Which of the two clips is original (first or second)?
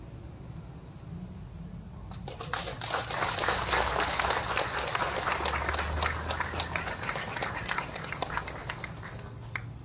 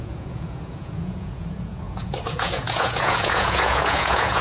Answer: first